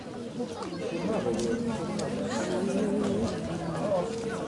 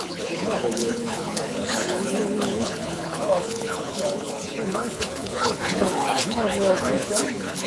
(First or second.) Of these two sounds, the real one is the first